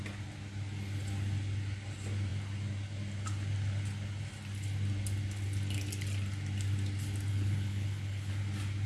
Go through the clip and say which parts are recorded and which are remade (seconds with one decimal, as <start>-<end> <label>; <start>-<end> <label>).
0.0-7.3 recorded; 7.3-8.3 remade; 8.3-8.9 recorded